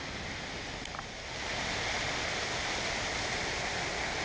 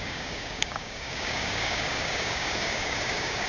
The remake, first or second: second